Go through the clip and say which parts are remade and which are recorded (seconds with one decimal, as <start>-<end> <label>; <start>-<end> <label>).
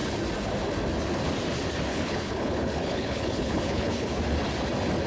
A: 0.0-1.9 recorded; 1.9-4.2 remade; 4.2-5.1 recorded